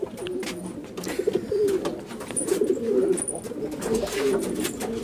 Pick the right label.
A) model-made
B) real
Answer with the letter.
B